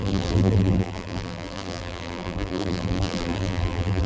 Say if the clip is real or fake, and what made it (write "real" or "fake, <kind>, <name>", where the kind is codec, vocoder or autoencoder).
fake, vocoder, BigVGAN v2